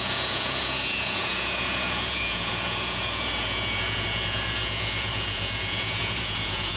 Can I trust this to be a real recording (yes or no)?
no